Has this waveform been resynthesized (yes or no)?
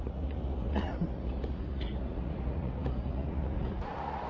yes